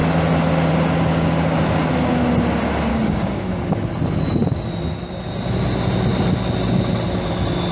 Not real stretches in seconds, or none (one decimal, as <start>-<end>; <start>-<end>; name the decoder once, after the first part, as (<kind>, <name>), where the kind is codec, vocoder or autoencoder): 2.9-3.5 (codec, DAC)